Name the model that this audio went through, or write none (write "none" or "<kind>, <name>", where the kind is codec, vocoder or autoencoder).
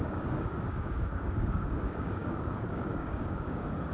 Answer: codec, DAC